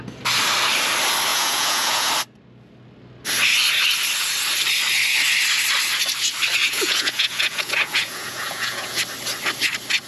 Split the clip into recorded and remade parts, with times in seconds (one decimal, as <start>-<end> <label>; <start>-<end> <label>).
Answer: 0.0-1.3 recorded; 1.3-2.1 remade; 2.1-6.6 recorded; 6.6-9.0 remade; 9.0-10.1 recorded